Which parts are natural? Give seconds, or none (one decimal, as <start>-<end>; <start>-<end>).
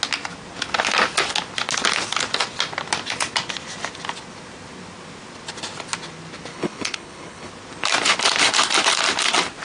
0.0-6.5; 7.5-9.6